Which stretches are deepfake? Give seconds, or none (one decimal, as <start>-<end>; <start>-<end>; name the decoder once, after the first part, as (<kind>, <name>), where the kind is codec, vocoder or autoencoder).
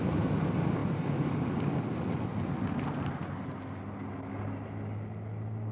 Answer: none